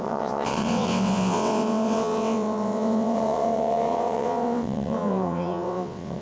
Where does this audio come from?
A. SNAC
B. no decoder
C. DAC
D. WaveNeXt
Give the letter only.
D